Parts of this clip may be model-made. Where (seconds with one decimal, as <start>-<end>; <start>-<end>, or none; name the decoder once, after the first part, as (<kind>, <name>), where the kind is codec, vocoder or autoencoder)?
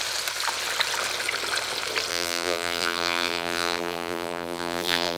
2.1-5.2 (vocoder, BigVGAN v2)